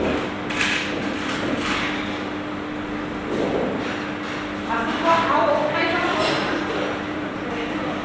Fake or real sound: real